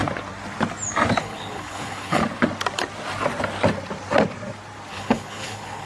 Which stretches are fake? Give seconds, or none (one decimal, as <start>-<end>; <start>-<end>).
1.2-2.2; 4.9-5.9